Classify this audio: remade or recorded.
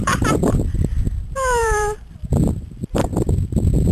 remade